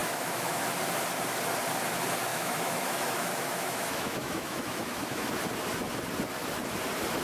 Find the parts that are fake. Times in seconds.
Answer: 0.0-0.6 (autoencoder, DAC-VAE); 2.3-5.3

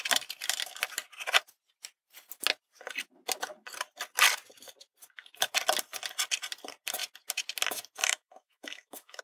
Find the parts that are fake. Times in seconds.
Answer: 8.0-9.2 (autoencoder, DAC-VAE)